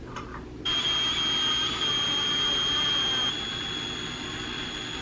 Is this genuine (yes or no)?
yes